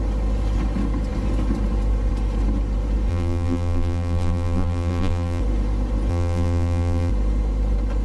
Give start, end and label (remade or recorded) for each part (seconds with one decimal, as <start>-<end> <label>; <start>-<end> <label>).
0.0-3.1 recorded; 3.1-5.4 remade; 5.4-6.1 recorded; 6.1-7.1 remade; 7.1-8.0 recorded